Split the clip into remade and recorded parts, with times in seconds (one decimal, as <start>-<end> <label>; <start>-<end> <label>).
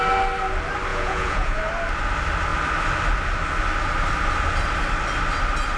0.0-0.9 recorded; 0.9-1.6 remade; 1.6-5.8 recorded